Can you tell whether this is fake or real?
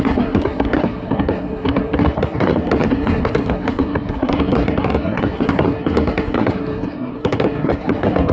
fake